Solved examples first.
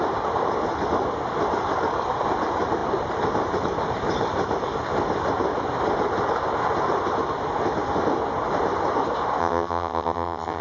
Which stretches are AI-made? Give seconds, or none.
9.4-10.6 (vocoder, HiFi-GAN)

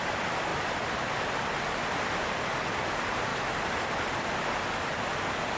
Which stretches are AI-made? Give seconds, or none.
none

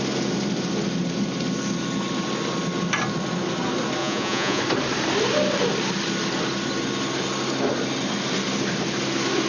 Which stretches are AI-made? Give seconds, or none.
4.0-4.6 (vocoder, Vocos)